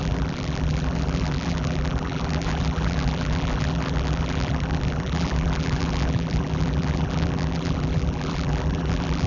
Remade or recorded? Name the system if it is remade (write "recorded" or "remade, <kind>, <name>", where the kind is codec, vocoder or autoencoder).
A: remade, vocoder, BigVGAN v2